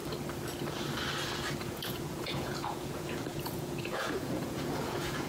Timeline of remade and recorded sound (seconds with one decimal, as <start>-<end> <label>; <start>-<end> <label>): 0.0-1.6 recorded; 1.6-5.3 remade